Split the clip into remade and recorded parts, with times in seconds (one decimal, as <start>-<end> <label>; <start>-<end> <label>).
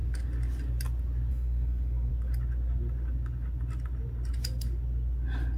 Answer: 0.0-1.3 recorded; 1.3-2.1 remade; 2.1-5.6 recorded